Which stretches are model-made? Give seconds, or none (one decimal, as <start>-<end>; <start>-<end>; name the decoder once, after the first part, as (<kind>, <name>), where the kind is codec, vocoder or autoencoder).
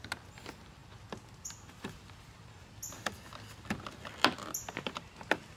none